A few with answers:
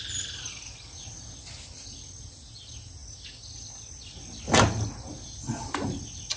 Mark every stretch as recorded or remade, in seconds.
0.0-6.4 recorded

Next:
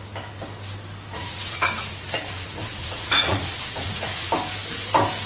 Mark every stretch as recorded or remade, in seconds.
0.0-1.1 recorded; 1.1-4.3 remade; 4.3-5.3 recorded

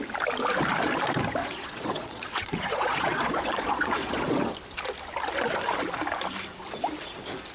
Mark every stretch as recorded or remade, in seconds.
0.0-1.4 recorded; 1.4-4.5 remade; 4.5-7.5 recorded

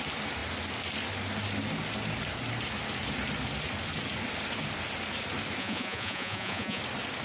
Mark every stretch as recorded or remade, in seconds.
0.0-5.6 recorded; 5.6-6.8 remade; 6.8-7.2 recorded